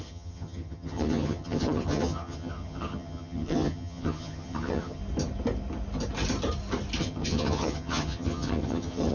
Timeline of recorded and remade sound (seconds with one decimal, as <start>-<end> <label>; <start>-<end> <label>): 0.0-5.0 remade; 5.0-7.0 recorded; 7.0-9.1 remade